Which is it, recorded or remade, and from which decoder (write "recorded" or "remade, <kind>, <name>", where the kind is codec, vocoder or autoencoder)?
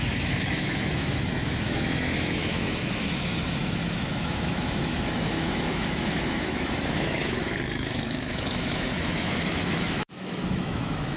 remade, autoencoder, DAC-VAE